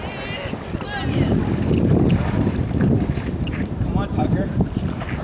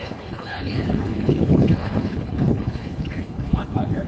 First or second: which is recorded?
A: first